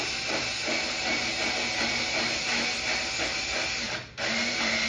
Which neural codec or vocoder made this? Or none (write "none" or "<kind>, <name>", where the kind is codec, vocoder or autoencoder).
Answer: none